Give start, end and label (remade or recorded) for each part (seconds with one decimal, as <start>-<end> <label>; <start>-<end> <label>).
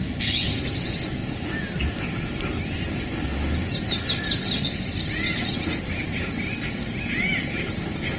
0.0-8.2 recorded